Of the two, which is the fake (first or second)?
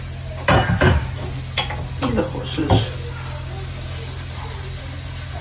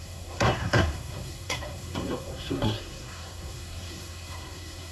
second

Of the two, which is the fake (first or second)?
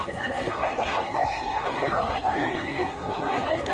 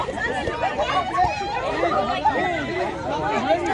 first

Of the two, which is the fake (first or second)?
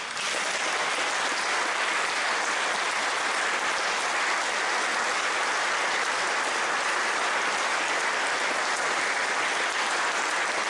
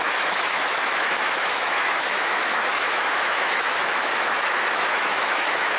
second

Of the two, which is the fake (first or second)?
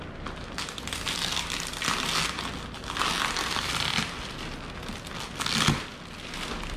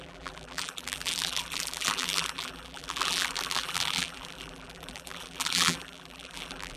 second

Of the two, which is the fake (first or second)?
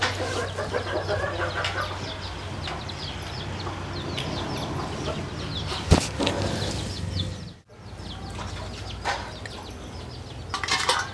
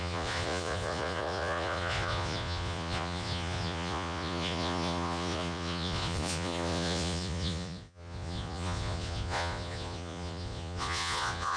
second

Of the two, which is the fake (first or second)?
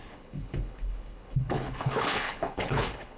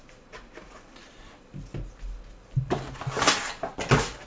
first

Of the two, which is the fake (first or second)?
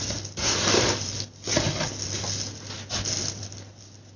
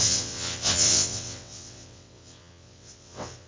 second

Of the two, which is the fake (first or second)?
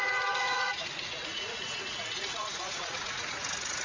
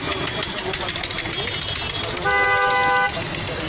first